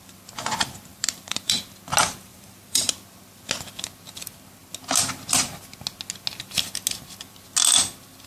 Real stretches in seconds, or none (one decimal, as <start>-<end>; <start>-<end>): 0.0-0.9; 1.6-2.3; 2.9-8.3